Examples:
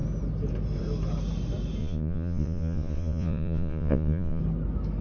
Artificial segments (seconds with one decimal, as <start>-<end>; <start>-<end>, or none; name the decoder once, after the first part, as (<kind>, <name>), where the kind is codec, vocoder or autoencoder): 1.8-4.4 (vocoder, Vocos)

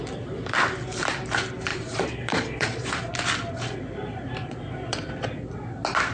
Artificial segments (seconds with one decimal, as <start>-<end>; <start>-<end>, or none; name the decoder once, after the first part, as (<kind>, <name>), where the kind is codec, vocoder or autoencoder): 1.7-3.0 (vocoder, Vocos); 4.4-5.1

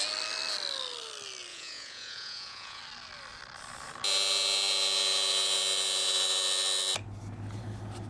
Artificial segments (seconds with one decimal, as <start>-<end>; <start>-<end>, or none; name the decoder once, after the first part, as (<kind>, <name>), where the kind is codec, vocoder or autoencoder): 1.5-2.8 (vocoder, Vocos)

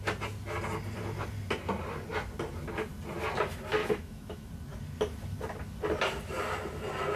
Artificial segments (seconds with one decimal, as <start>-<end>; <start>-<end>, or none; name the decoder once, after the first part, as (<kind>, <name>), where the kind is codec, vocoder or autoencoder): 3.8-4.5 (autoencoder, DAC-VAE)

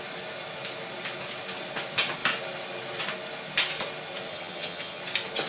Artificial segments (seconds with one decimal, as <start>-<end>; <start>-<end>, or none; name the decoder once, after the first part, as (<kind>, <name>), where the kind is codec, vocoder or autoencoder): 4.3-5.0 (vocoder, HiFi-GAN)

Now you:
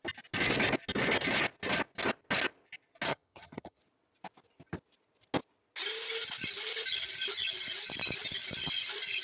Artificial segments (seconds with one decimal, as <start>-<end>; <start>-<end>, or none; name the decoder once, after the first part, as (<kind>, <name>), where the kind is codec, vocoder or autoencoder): 3.1-3.8 (vocoder, HiFi-GAN)

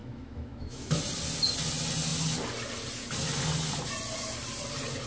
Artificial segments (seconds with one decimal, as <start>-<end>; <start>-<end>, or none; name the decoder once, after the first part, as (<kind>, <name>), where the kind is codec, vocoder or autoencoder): 0.0-1.0 (autoencoder, DAC-VAE)